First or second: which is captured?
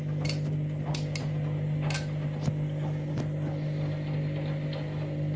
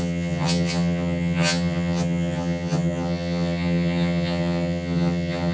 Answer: first